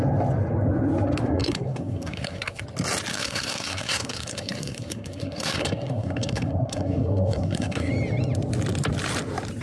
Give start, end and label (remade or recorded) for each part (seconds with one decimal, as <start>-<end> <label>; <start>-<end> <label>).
0.0-1.2 recorded; 1.2-2.6 remade; 2.6-3.1 recorded; 3.1-7.9 remade; 7.9-9.6 recorded